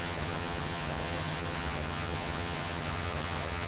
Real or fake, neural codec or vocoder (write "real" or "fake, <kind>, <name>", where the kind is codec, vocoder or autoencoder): fake, vocoder, HiFi-GAN